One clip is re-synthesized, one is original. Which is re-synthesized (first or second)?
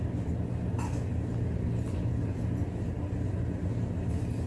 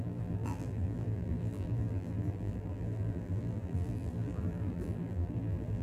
second